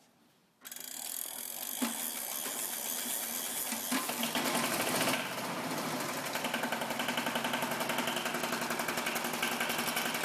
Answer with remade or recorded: recorded